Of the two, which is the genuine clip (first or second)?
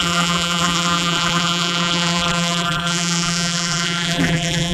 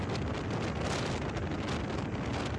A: second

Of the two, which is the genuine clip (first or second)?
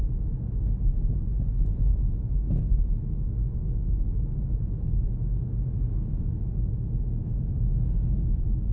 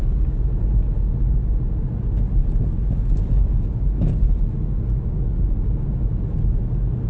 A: second